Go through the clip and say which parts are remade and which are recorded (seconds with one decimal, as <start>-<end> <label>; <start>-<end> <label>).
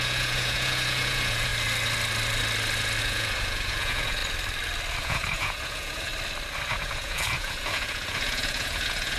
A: 0.0-1.5 remade; 1.5-3.0 recorded; 3.0-4.2 remade; 4.2-5.0 recorded; 5.0-6.1 remade; 6.1-6.7 recorded; 6.7-9.2 remade